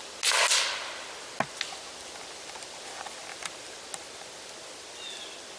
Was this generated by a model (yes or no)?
no